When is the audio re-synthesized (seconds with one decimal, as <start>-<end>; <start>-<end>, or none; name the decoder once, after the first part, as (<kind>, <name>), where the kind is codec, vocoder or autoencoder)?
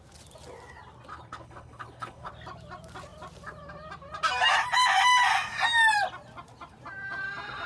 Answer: 1.1-2.3 (codec, HILCodec)